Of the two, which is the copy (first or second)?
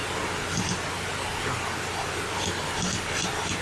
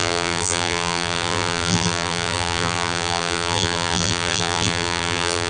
second